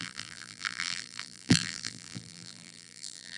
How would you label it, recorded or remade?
remade